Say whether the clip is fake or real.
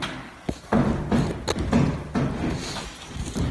real